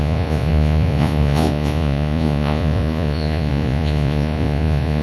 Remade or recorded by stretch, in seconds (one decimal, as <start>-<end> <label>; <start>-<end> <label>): 0.0-5.0 remade

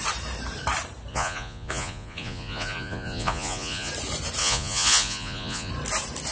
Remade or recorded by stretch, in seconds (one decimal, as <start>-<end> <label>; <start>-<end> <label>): 0.0-1.1 recorded; 1.1-3.9 remade; 3.9-4.4 recorded; 4.4-5.7 remade; 5.7-6.3 recorded

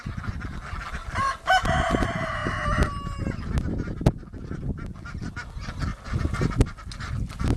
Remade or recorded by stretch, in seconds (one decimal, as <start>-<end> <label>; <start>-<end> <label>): 0.0-7.6 recorded

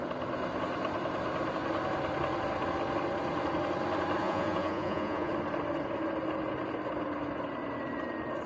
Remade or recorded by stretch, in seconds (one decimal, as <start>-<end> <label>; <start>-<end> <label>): 0.0-4.2 recorded; 4.2-5.3 remade; 5.3-8.5 recorded

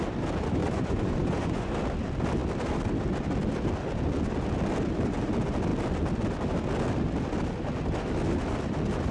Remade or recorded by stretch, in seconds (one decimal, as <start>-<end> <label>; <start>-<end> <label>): 0.0-0.6 recorded; 0.6-1.7 remade; 1.7-9.1 recorded

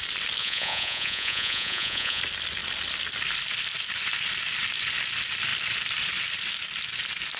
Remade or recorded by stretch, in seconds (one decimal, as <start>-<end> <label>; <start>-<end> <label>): 0.0-0.4 recorded; 0.4-2.2 remade; 2.2-7.4 recorded